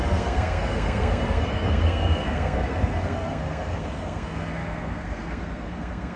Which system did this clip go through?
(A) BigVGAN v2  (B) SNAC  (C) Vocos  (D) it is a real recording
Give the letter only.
B